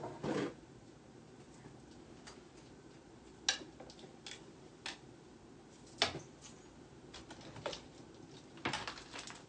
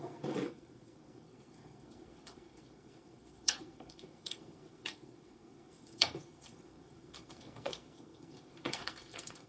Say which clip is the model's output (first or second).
second